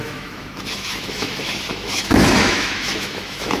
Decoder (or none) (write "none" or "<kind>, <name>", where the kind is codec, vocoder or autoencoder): autoencoder, DAC-VAE